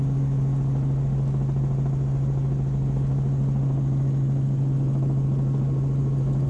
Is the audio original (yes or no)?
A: yes